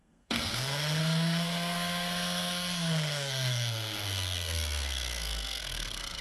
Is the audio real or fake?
fake